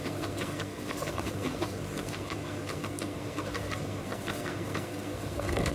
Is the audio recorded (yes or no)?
no